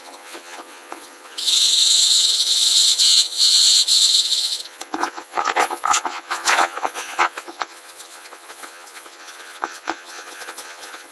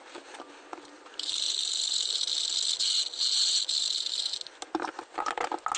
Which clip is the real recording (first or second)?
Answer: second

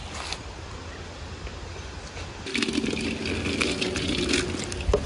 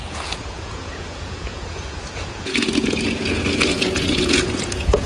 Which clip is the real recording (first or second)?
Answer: first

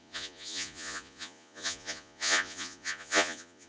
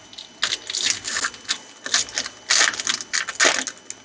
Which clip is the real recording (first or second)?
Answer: second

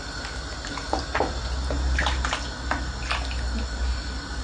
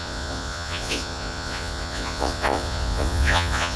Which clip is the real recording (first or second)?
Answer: first